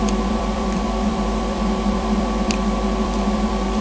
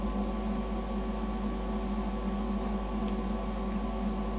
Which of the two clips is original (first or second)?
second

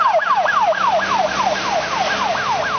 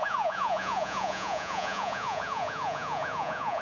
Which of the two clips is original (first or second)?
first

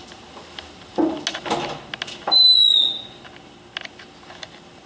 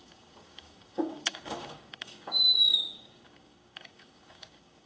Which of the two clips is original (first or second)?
first